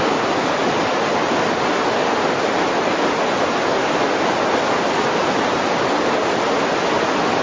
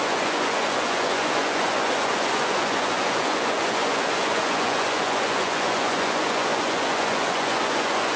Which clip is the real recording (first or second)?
first